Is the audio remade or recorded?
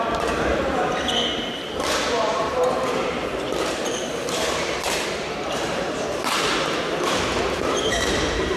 remade